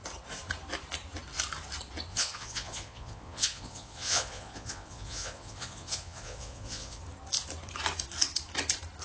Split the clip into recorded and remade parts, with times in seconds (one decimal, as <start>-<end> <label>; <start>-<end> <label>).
0.0-2.1 recorded; 2.1-7.0 remade; 7.0-9.0 recorded